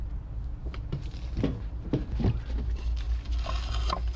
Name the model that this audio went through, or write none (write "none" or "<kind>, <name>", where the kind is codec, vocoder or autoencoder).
none